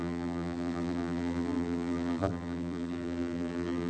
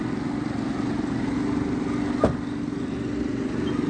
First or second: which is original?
second